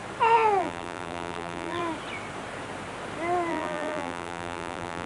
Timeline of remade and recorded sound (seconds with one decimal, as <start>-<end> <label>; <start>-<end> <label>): 0.0-0.6 recorded; 0.6-1.8 remade; 1.8-3.5 recorded; 3.5-5.1 remade